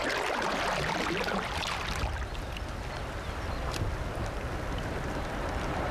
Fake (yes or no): no